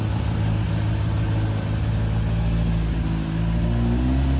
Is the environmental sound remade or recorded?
recorded